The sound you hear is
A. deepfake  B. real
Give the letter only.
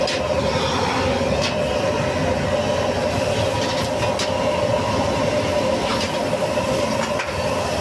B